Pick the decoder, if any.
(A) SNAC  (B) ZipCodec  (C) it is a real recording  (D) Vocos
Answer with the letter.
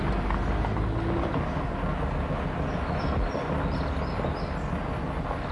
C